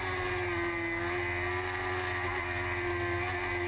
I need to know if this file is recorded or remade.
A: recorded